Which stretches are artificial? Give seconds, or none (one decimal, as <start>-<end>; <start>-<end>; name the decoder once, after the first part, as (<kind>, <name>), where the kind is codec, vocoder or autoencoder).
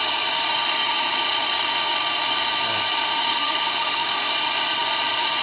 3.3-4.3 (autoencoder, DAC-VAE)